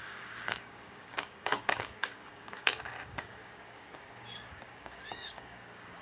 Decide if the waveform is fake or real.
fake